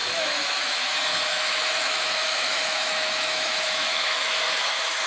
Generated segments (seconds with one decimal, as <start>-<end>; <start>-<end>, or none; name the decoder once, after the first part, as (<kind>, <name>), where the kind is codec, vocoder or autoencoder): 0.0-5.1 (autoencoder, DAC-VAE)